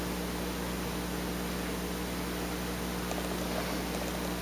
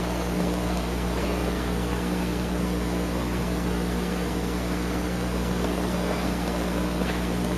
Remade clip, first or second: second